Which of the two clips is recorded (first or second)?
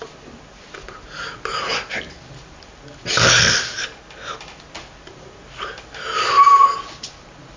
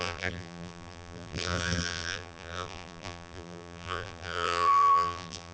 first